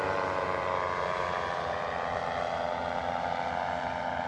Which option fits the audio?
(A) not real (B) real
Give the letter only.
B